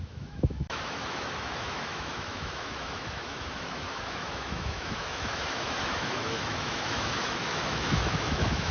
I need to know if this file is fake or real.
fake